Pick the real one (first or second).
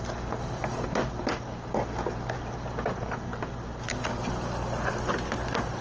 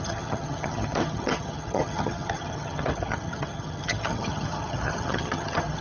first